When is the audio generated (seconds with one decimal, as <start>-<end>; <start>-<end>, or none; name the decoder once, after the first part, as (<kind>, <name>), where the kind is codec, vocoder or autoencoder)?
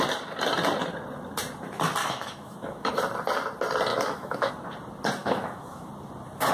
2.0-2.9 (autoencoder, DAC-VAE); 3.9-4.5; 5.2-5.9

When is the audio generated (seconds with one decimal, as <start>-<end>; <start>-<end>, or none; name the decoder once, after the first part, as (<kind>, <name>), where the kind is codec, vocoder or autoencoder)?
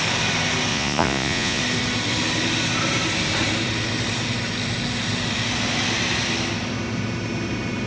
0.7-1.6 (vocoder, Vocos)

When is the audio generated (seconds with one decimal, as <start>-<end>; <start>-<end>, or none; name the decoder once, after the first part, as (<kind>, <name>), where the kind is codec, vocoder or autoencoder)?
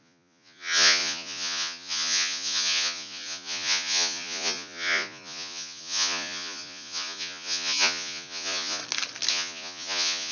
0.0-8.8 (vocoder, Vocos); 9.3-10.3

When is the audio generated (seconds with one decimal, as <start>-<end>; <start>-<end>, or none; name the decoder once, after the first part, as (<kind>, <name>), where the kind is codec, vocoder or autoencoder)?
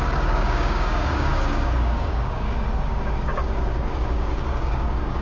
0.0-5.2 (codec, DAC)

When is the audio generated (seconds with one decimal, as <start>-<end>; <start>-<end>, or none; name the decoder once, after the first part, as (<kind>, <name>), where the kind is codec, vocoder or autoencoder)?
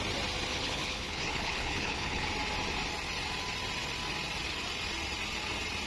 0.5-2.3 (codec, HILCodec)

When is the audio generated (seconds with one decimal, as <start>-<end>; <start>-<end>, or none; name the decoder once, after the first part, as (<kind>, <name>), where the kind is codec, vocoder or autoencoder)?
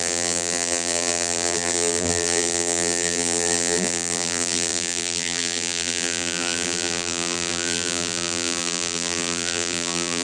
0.0-10.2 (vocoder, BigVGAN v2)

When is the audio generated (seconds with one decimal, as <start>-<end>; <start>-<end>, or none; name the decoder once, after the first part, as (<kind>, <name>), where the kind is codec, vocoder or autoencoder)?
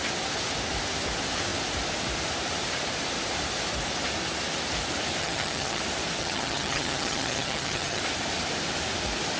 5.2-5.8 (vocoder, HiFi-GAN); 6.2-8.0